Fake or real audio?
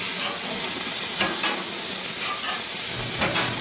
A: real